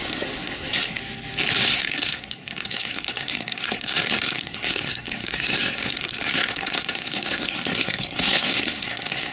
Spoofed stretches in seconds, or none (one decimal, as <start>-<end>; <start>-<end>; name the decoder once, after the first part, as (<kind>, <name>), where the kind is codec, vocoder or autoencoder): 0.0-1.0 (codec, SNAC); 1.6-9.3